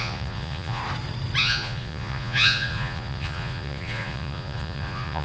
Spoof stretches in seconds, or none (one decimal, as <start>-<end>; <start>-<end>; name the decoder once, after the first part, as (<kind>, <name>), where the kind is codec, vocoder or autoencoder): 0.0-0.8 (vocoder, Vocos); 1.4-5.2